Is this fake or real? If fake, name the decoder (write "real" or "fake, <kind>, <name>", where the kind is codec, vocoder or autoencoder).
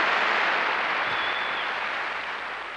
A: real